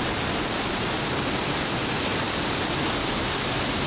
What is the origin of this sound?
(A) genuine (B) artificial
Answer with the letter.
A